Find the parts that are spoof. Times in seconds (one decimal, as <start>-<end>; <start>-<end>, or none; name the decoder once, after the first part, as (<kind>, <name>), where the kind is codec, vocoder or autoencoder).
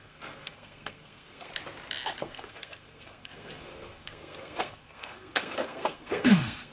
0.0-1.5 (codec, SNAC); 2.2-6.7